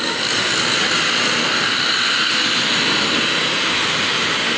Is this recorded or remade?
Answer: recorded